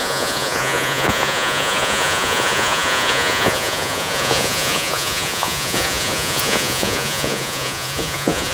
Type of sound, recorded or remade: remade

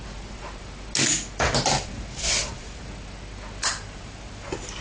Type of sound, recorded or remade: recorded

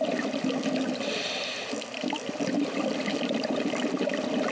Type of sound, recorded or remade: recorded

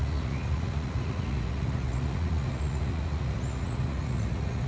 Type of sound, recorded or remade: remade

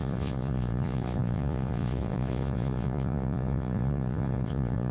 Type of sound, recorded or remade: remade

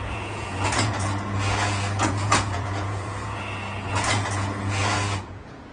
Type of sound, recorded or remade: remade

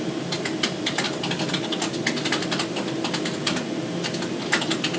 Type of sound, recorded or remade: recorded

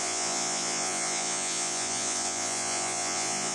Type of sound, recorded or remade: remade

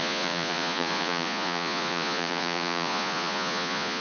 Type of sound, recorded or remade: remade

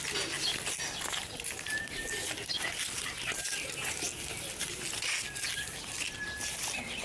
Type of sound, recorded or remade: recorded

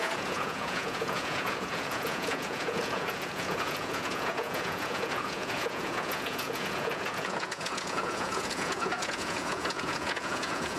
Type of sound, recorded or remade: remade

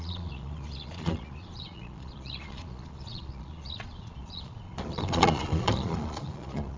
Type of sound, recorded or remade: remade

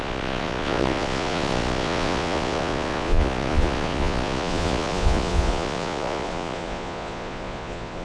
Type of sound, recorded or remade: remade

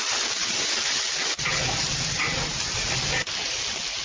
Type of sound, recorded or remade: recorded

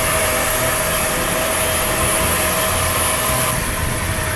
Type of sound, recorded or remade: recorded